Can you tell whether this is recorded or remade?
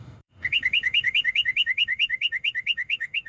remade